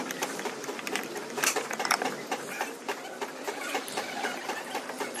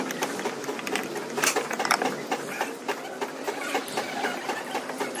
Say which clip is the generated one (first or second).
first